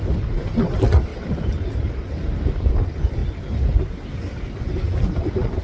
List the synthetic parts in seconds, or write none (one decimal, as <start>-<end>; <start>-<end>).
1.1-2.7; 3.2-4.0